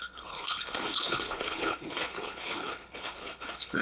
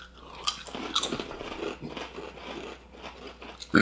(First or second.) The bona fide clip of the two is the second